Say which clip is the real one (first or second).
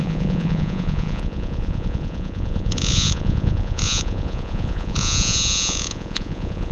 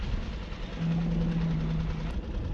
second